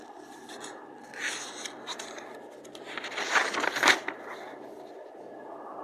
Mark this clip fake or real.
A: real